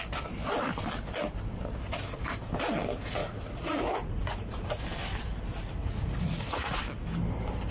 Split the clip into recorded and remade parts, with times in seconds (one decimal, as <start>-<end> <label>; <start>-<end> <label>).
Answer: 0.0-3.2 recorded; 3.2-4.8 remade; 4.8-5.8 recorded; 5.8-6.8 remade; 6.8-7.7 recorded